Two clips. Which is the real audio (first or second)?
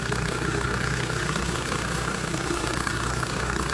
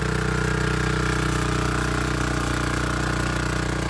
second